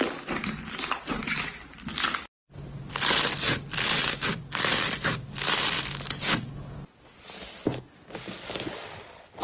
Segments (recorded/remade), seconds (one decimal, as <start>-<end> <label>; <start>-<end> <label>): 0.0-9.4 recorded